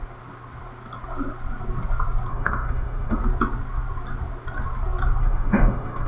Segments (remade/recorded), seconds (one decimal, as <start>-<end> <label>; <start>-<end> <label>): 0.0-2.3 recorded; 2.3-3.2 remade; 3.2-5.2 recorded; 5.2-6.1 remade